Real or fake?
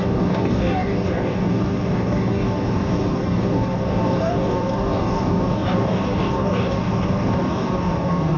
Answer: fake